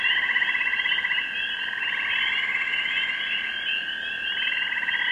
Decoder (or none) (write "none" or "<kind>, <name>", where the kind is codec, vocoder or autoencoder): none